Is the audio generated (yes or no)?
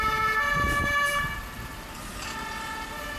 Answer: no